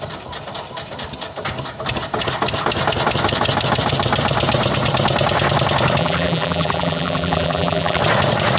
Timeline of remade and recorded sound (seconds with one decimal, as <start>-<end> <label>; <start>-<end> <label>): 0.0-6.0 recorded; 6.0-8.0 remade; 8.0-8.6 recorded